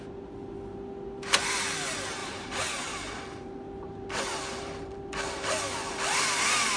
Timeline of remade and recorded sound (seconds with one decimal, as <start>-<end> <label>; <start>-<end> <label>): 0.0-2.2 recorded; 2.2-4.9 remade; 4.9-6.8 recorded